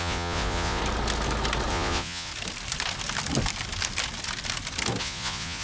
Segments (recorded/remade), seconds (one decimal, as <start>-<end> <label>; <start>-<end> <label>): 0.0-0.8 remade; 0.8-1.7 recorded; 1.7-2.3 remade; 2.3-5.0 recorded; 5.0-5.6 remade